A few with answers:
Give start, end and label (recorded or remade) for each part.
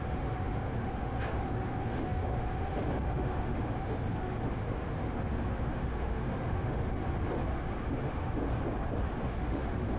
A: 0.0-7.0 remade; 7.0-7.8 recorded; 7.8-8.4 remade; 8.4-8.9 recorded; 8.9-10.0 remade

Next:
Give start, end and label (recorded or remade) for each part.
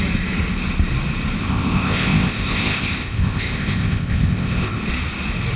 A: 0.0-1.4 recorded; 1.4-4.8 remade; 4.8-5.6 recorded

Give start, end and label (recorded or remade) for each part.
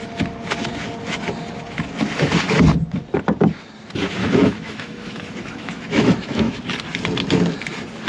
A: 0.0-4.2 recorded; 4.2-6.6 remade; 6.6-8.1 recorded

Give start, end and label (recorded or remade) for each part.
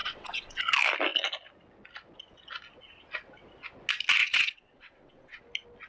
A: 0.0-0.6 remade; 0.6-4.2 recorded; 4.2-5.4 remade; 5.4-5.9 recorded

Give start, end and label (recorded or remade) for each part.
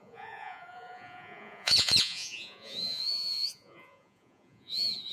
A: 0.0-5.1 remade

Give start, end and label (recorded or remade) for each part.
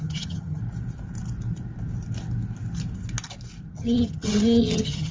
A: 0.0-0.6 remade; 0.6-3.7 recorded; 3.7-5.1 remade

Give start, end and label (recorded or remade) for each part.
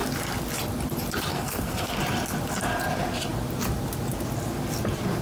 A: 0.0-1.3 recorded; 1.3-2.0 remade; 2.0-5.2 recorded